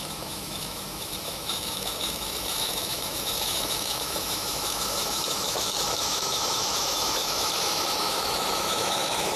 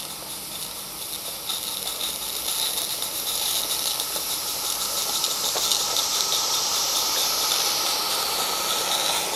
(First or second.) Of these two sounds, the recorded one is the second